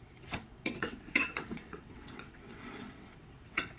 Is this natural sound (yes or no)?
no